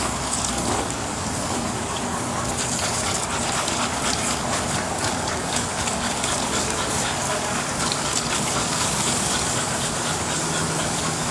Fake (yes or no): yes